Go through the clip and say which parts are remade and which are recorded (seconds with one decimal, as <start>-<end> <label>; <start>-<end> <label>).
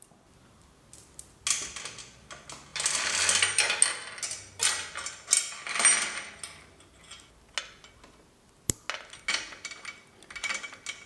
0.0-11.1 recorded